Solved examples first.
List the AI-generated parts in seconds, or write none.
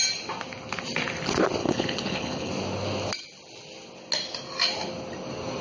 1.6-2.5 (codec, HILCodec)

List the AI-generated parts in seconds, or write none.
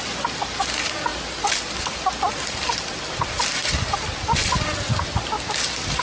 none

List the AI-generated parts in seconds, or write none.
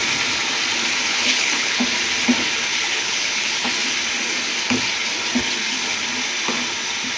1.1-1.8 (codec, HILCodec); 2.7-3.7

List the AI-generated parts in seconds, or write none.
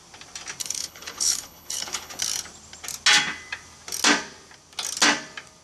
0.6-2.2 (codec, HILCodec)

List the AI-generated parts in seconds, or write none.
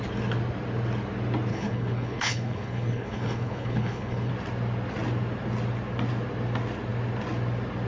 1.5-4.3 (codec, HILCodec)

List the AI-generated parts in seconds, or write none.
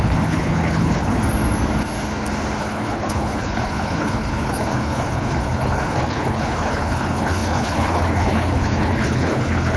0.0-1.2 (codec, HILCodec); 2.6-9.8